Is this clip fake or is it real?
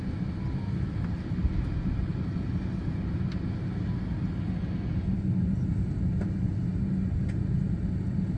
real